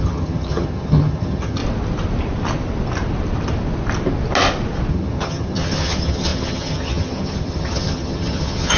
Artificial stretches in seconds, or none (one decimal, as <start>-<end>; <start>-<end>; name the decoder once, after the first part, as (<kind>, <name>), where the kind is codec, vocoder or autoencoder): 0.0-1.6 (vocoder, HiFi-GAN); 4.9-8.8